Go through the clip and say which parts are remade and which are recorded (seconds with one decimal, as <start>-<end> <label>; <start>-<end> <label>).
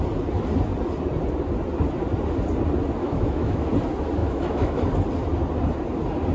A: 0.0-3.0 recorded; 3.0-3.7 remade; 3.7-4.2 recorded; 4.2-4.8 remade; 4.8-6.3 recorded